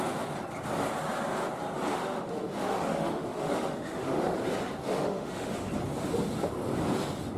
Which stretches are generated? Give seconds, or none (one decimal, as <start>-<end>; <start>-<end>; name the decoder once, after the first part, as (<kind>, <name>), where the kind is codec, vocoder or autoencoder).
1.9-4.4 (autoencoder, DAC-VAE); 4.9-5.7